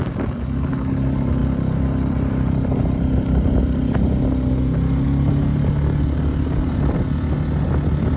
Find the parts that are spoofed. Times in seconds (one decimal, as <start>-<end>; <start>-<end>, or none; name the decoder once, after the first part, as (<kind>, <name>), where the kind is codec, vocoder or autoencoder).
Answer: 1.4-4.3 (vocoder, BigVGAN v2)